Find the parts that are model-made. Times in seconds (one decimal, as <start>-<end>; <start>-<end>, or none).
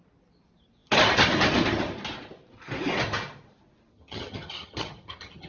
3.9-5.5